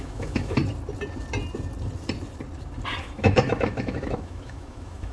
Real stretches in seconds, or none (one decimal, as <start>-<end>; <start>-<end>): 0.6-3.0